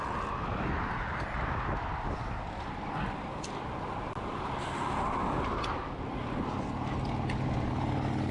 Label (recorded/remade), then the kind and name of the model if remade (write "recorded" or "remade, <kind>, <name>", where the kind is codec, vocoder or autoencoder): recorded